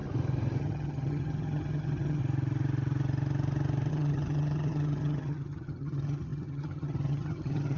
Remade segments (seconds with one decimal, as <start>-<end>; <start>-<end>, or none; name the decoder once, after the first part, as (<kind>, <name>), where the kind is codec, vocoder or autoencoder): 0.6-2.2 (vocoder, HiFi-GAN); 3.9-7.8